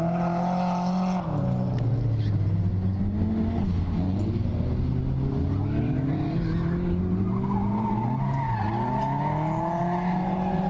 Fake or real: real